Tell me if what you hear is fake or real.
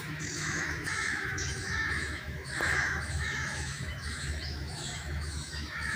fake